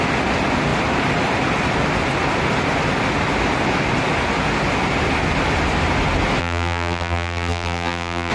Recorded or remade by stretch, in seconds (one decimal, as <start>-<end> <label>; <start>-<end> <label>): 0.0-6.4 recorded; 6.4-8.3 remade